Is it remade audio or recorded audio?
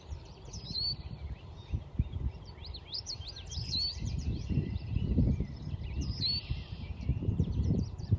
remade